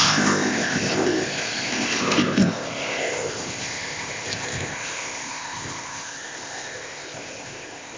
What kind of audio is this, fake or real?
fake